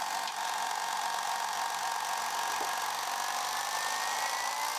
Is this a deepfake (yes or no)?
no